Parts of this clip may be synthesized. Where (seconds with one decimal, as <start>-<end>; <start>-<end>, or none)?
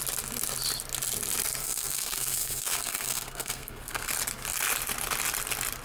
1.6-4.1